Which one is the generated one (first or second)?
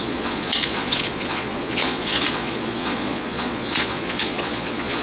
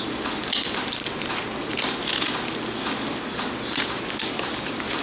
first